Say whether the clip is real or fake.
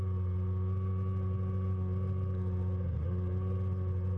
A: real